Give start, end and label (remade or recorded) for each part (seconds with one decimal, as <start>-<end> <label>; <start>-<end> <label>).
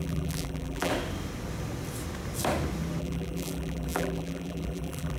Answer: 0.0-0.9 remade; 0.9-3.0 recorded; 3.0-5.2 remade